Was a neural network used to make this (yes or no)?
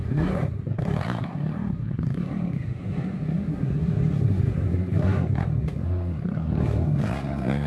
yes